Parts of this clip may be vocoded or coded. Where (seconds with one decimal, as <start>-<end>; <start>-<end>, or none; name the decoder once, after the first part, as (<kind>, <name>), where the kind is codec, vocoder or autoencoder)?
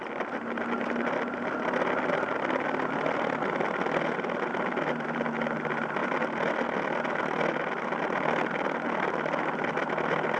none